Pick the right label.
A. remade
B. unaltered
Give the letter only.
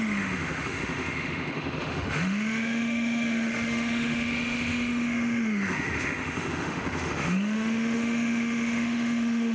A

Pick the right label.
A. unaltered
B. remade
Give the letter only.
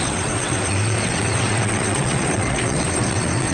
B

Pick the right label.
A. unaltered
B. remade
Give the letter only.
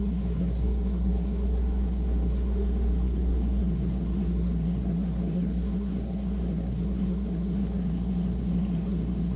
B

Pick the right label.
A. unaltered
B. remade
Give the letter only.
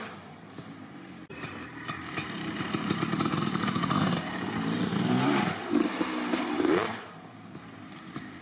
B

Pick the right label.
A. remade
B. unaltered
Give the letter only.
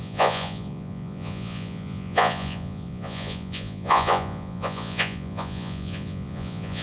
A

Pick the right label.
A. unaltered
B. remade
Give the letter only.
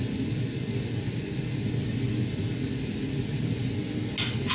A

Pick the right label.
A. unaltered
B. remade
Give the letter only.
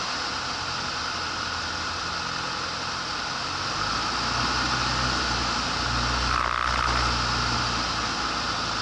A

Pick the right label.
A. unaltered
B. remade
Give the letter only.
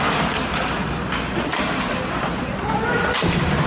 A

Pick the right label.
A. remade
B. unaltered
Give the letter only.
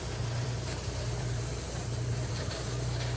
A